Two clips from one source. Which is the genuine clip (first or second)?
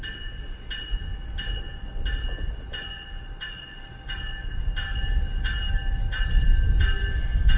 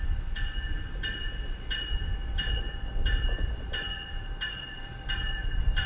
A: first